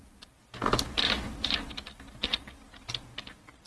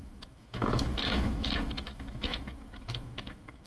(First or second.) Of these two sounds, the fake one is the second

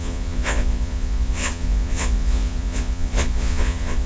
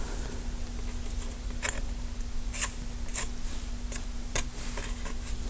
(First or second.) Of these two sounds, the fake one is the first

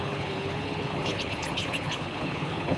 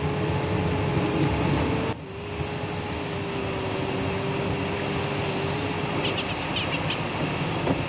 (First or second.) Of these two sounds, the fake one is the first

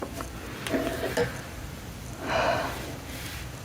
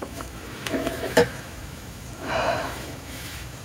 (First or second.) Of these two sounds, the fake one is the second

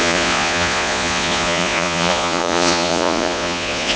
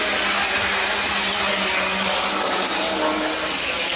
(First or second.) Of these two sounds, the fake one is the first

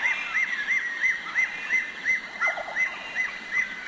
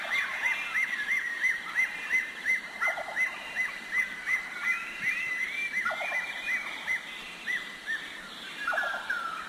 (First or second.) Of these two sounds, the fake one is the second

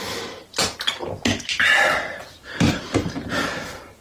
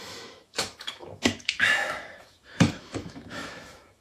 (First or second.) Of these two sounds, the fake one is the second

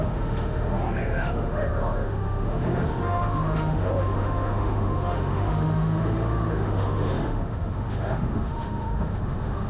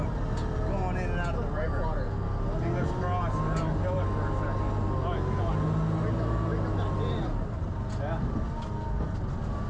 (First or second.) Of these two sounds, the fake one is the first